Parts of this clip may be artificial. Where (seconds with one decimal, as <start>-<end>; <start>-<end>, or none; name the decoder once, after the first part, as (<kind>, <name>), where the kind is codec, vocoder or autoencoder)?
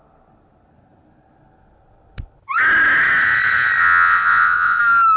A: 3.8-4.8 (vocoder, Vocos)